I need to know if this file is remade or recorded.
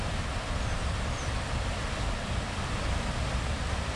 recorded